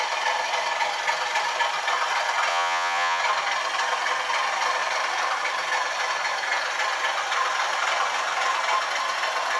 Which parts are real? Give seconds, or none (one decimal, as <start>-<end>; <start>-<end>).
0.0-2.5; 3.2-9.6